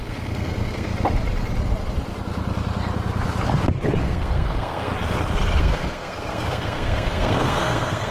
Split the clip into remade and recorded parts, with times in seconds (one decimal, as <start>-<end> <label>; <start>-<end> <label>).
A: 0.0-0.9 remade; 0.9-4.0 recorded; 4.0-4.9 remade; 4.9-5.6 recorded; 5.6-8.1 remade